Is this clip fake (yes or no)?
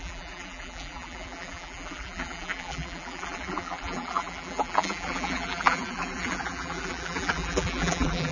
yes